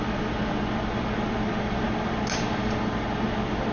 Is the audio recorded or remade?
recorded